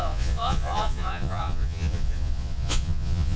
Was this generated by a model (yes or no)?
yes